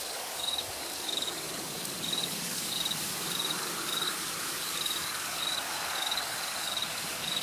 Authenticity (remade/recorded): remade